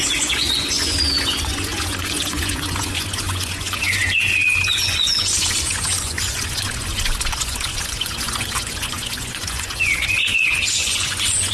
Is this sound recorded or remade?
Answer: remade